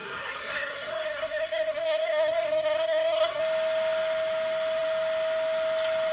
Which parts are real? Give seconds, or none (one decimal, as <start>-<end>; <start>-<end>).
3.4-6.1